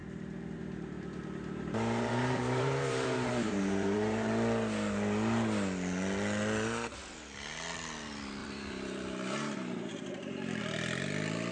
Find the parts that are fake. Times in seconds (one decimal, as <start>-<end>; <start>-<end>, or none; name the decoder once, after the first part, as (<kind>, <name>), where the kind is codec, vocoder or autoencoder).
0.0-4.3 (vocoder, BigVGAN v2); 8.4-10.6